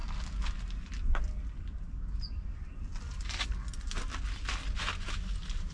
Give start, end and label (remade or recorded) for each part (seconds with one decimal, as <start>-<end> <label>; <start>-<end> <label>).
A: 0.0-5.7 recorded